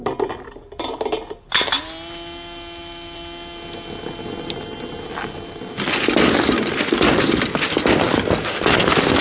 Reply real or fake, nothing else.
real